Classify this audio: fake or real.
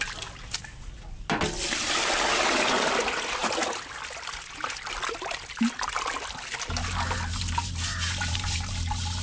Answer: real